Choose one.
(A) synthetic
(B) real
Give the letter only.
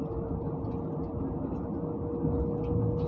B